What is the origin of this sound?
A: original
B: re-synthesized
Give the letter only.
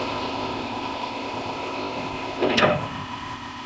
B